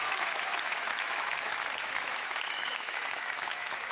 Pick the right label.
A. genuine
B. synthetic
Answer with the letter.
B